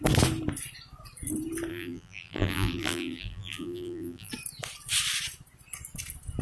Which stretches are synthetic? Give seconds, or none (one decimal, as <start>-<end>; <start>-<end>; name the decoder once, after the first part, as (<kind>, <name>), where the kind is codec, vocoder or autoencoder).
1.7-4.3 (vocoder, BigVGAN v2)